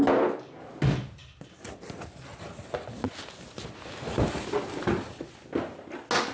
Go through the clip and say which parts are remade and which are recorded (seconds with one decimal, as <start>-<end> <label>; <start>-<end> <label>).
0.0-6.3 recorded